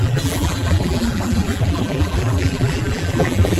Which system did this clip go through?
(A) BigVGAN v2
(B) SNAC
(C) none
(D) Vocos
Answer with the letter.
A